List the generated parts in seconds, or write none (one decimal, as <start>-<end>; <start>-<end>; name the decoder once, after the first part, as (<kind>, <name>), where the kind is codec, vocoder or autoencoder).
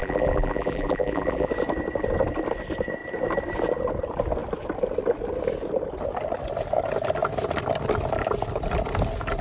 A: 0.0-1.5 (vocoder, BigVGAN v2)